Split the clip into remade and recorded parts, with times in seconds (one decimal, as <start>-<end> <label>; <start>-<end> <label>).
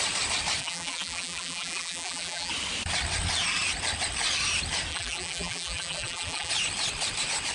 0.0-0.6 recorded; 0.6-2.5 remade; 2.5-4.9 recorded; 4.9-6.5 remade; 6.5-7.5 recorded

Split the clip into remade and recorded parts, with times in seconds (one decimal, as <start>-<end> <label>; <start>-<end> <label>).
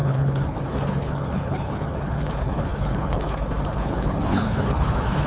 0.0-5.3 remade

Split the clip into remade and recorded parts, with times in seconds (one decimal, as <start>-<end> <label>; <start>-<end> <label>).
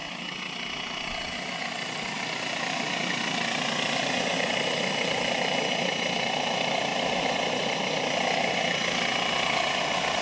0.0-6.9 recorded; 6.9-8.7 remade; 8.7-10.2 recorded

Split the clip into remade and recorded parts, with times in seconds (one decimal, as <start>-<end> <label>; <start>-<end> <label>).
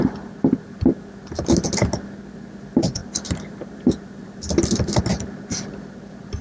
0.0-3.0 recorded; 3.0-5.0 remade; 5.0-6.4 recorded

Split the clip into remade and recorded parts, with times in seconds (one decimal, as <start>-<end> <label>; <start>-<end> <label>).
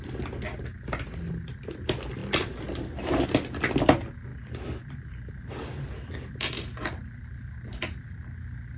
0.0-8.8 recorded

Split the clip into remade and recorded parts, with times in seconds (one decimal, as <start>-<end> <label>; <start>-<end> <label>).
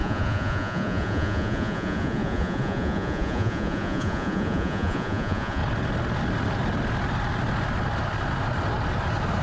0.0-5.6 remade; 5.6-9.4 recorded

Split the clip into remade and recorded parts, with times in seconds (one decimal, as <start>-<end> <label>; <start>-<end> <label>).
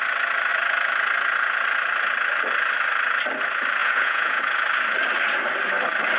0.0-3.8 recorded; 3.8-4.4 remade; 4.4-6.2 recorded